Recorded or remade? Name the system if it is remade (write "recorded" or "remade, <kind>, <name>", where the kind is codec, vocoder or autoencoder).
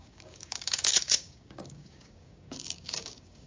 remade, codec, DAC